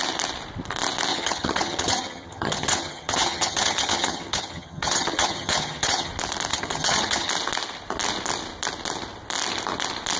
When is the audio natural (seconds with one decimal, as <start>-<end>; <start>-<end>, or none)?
0.0-1.1; 6.1-6.5; 7.3-10.2